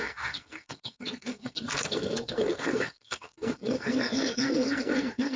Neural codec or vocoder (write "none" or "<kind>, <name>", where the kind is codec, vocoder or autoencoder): codec, SNAC